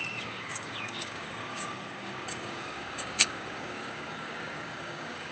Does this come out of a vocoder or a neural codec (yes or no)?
yes